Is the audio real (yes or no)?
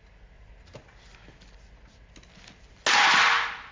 yes